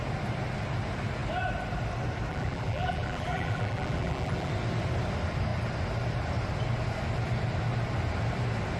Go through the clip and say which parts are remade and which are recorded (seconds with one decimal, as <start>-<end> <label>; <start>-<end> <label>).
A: 0.0-2.3 recorded; 2.3-4.5 remade; 4.5-8.8 recorded